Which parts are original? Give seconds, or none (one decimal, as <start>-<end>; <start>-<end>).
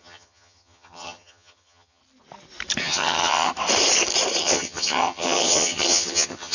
2.0-2.8; 3.5-4.4